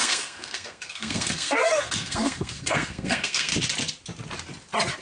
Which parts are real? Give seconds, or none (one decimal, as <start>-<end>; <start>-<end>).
3.5-5.0